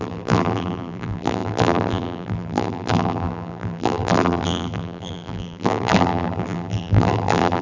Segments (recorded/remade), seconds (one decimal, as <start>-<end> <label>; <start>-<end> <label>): 0.0-7.6 remade